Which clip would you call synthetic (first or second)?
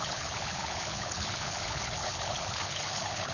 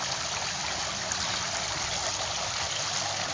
first